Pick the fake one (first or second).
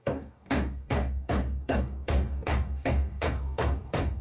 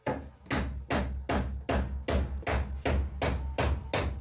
first